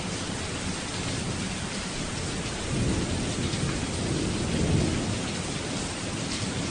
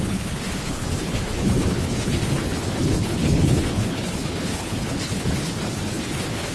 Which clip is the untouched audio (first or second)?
first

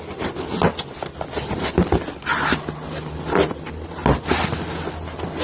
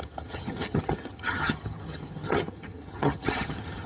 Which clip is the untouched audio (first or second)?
first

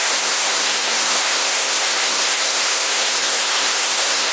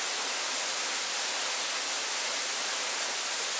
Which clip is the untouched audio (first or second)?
second